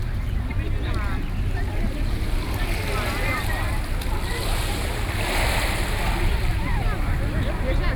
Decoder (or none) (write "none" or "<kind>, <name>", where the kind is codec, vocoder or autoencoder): none